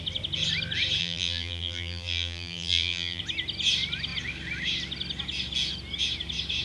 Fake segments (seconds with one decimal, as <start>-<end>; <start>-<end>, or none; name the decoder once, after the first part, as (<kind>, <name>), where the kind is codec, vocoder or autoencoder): 1.0-3.2 (vocoder, BigVGAN v2)